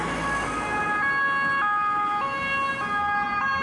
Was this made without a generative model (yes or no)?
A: yes